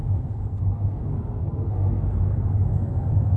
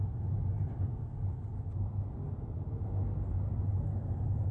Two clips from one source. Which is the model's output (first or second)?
first